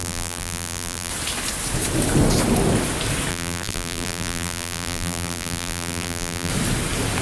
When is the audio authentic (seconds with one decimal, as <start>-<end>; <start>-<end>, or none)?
1.1-3.3; 6.5-7.2